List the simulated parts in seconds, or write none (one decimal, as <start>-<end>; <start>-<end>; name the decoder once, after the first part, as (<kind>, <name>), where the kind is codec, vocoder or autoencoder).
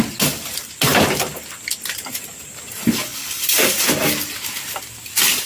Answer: none